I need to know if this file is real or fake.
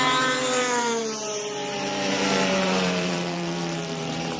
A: fake